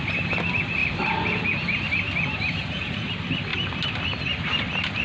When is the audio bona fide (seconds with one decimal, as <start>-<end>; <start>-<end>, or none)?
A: 0.0-2.6; 3.1-5.0